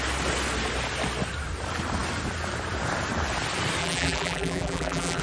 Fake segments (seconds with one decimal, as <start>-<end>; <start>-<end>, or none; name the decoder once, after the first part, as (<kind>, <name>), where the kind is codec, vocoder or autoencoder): 3.8-5.2 (vocoder, BigVGAN v2)